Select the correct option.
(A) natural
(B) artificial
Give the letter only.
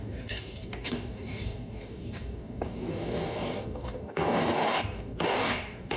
B